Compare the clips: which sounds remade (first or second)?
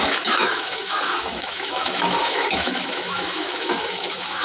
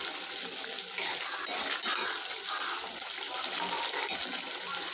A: first